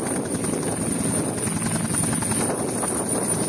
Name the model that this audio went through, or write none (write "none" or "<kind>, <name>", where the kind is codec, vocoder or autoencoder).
none